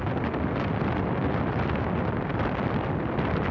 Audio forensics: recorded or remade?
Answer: remade